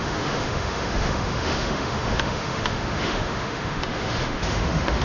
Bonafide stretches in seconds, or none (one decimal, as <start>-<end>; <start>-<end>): none